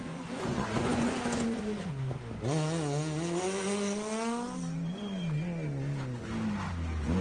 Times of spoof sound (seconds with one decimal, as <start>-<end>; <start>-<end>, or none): 0.0-1.9

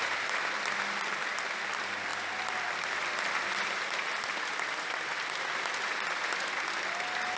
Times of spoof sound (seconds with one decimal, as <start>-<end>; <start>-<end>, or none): none